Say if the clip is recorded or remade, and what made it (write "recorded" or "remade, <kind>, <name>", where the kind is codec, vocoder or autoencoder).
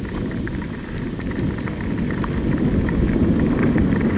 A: recorded